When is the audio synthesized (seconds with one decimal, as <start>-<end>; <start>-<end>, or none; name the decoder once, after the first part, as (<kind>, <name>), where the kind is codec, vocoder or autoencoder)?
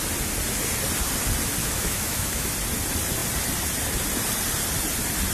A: 1.6-2.5 (autoencoder, DAC-VAE)